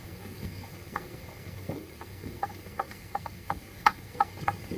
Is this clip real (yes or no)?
no